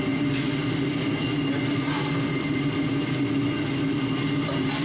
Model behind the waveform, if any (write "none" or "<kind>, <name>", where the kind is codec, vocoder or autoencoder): none